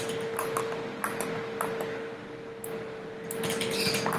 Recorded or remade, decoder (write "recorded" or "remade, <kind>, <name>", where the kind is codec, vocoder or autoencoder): recorded